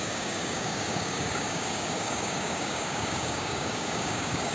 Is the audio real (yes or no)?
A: no